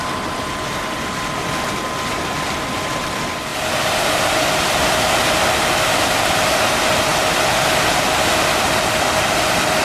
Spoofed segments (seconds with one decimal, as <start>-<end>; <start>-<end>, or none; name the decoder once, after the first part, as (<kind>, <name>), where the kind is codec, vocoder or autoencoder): 3.5-5.5 (vocoder, BigVGAN v2)